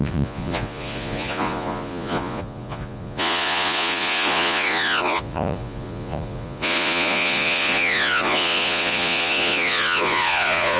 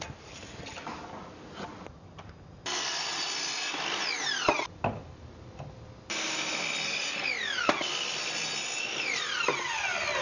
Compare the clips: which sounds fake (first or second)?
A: first